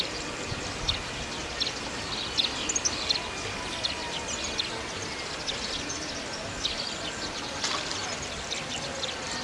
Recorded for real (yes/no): yes